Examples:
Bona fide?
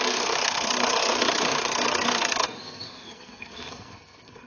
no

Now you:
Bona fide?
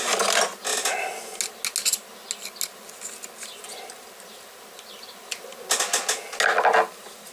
yes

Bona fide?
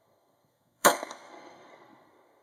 no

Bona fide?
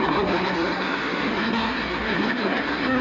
no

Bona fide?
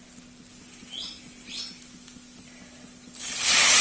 yes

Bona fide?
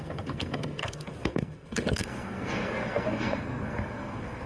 no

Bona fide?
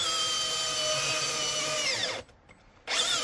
yes